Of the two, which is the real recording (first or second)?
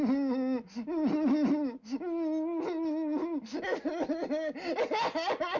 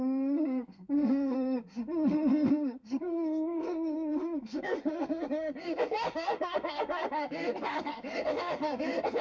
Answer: first